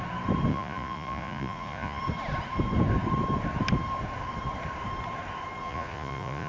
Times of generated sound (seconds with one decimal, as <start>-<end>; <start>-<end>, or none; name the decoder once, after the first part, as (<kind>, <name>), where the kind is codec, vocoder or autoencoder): 0.5-2.0 (vocoder, Vocos); 5.6-6.5